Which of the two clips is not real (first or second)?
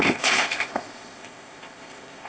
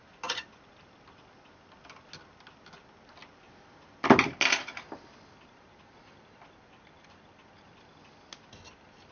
first